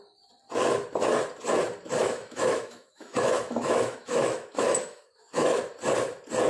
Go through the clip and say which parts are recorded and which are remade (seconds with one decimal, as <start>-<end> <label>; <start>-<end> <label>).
0.0-2.0 recorded; 2.0-5.6 remade; 5.6-6.5 recorded